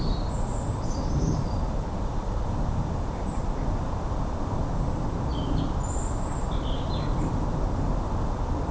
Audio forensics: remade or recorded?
recorded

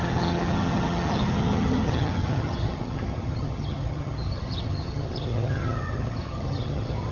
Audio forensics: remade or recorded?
remade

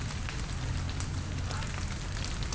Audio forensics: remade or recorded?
recorded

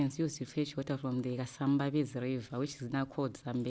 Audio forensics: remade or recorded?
recorded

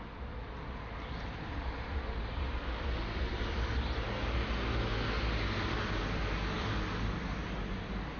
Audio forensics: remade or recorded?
recorded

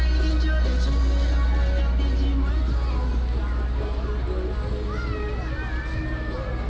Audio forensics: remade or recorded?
recorded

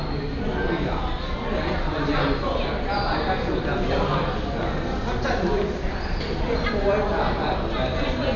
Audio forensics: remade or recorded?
recorded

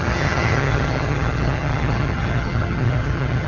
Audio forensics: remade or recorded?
remade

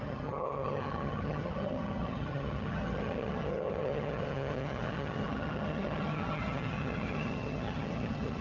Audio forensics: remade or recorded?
remade